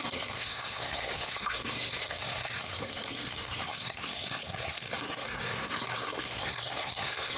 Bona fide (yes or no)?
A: no